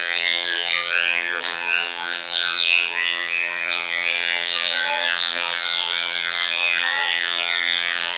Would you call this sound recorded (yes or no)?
no